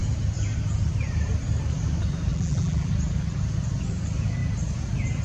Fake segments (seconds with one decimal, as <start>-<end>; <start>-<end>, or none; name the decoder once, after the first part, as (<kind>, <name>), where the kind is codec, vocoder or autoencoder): 2.3-2.9 (vocoder, BigVGAN v2)